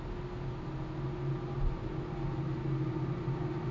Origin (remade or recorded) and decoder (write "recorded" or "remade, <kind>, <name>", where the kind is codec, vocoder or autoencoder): recorded